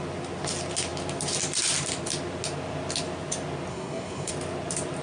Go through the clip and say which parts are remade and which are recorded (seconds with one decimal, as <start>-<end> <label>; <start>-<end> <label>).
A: 0.0-3.7 recorded; 3.7-4.3 remade; 4.3-5.0 recorded